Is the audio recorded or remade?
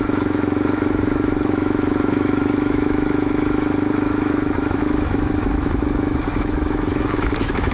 remade